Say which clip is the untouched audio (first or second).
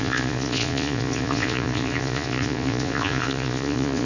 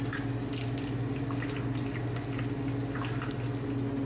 second